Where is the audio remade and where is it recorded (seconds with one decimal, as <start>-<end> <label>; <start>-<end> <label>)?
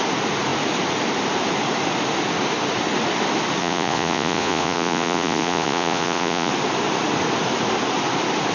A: 0.0-3.6 recorded; 3.6-6.5 remade; 6.5-8.5 recorded